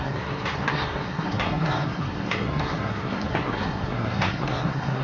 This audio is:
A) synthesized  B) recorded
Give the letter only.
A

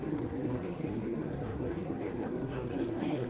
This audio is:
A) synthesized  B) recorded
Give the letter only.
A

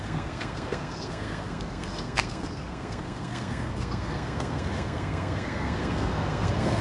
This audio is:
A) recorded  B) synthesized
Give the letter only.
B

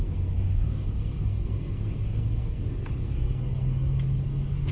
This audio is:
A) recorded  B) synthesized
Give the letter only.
B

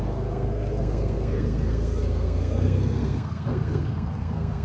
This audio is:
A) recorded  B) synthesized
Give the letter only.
B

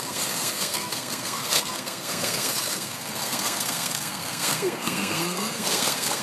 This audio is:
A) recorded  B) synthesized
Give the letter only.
B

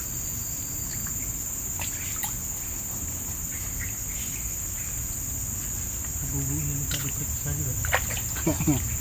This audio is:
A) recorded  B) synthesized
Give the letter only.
A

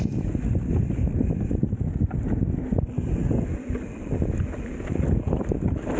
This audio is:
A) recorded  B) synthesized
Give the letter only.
A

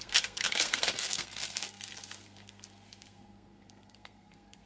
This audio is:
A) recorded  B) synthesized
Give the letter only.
B